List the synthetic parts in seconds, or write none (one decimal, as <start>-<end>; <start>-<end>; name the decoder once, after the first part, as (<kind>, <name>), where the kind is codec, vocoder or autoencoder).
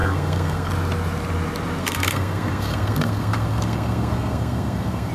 0.0-0.7 (codec, SNAC); 1.8-5.1